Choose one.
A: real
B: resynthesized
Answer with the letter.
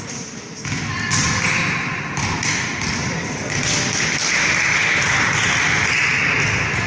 A